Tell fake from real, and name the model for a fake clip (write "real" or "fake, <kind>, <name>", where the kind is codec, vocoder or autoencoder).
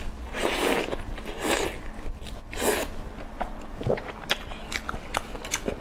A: real